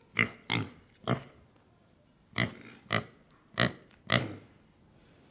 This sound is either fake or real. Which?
real